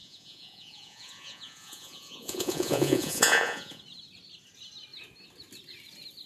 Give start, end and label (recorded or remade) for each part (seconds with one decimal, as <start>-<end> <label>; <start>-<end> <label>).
0.0-3.8 remade; 3.8-6.3 recorded

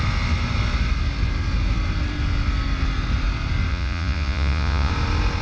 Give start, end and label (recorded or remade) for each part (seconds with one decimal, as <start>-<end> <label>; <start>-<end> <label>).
0.0-3.7 recorded; 3.7-4.9 remade; 4.9-5.4 recorded

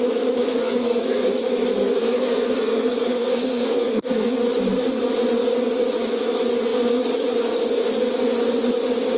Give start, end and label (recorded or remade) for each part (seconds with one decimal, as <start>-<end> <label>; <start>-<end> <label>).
0.0-0.5 recorded; 0.5-1.3 remade; 1.3-2.0 recorded; 2.0-4.4 remade; 4.4-9.2 recorded

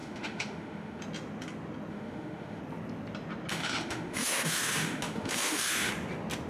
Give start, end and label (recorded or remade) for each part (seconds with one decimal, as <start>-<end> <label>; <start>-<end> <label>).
0.0-1.0 remade; 1.0-1.9 recorded; 1.9-2.6 remade; 2.6-3.5 recorded; 3.5-5.9 remade; 5.9-6.5 recorded

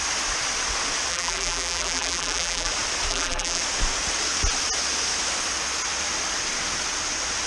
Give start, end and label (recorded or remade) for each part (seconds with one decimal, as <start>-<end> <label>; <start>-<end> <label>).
0.0-1.1 recorded; 1.1-2.7 remade; 2.7-3.1 recorded; 3.1-3.6 remade; 3.6-7.5 recorded

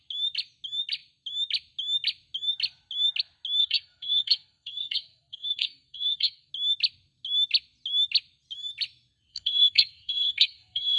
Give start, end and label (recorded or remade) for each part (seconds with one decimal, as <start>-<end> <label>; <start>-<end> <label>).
0.0-3.6 recorded; 3.6-6.5 remade; 6.5-9.3 recorded; 9.3-11.0 remade

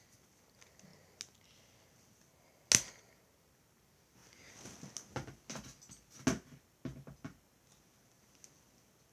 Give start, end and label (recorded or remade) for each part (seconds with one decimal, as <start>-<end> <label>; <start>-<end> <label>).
0.0-9.1 recorded

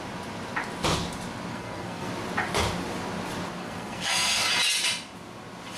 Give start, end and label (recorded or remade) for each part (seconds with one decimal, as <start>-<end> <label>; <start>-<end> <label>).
0.0-1.5 recorded; 1.5-2.1 remade; 2.1-3.6 recorded; 3.6-4.5 remade; 4.5-5.8 recorded